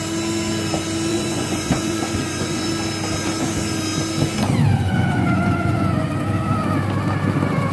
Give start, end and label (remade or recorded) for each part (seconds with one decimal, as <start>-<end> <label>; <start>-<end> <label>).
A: 0.0-1.1 recorded; 1.1-2.7 remade; 2.7-4.8 recorded; 4.8-6.1 remade; 6.1-7.7 recorded